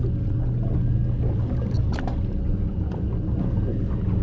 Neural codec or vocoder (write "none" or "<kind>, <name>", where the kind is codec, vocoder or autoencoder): none